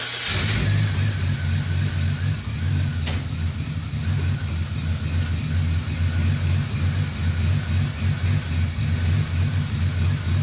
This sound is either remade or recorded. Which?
recorded